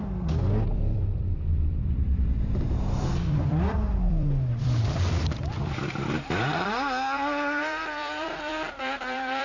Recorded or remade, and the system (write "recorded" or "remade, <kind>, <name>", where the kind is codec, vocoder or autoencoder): remade, vocoder, BigVGAN v2